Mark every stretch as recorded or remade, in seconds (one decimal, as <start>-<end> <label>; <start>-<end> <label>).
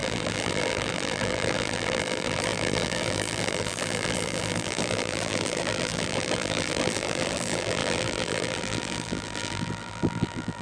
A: 0.0-10.6 remade